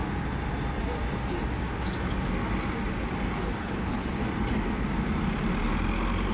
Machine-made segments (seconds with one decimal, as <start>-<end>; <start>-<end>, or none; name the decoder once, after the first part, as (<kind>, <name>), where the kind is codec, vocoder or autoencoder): 3.6-4.2 (codec, HILCodec)